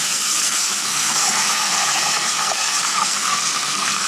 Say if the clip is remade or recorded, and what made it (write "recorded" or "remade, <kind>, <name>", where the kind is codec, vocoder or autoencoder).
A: remade, codec, SNAC